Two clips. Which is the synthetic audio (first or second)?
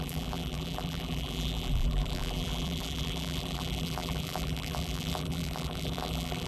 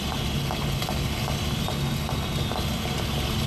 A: first